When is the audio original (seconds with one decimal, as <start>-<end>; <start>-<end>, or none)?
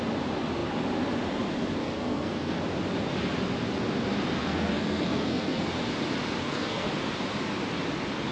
0.0-1.8; 2.6-4.4; 5.6-6.4; 6.9-8.3